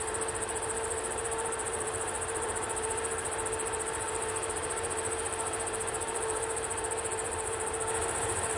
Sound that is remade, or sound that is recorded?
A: remade